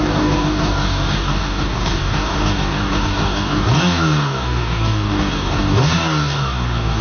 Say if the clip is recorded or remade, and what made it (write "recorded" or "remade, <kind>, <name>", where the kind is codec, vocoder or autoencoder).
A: remade, codec, DAC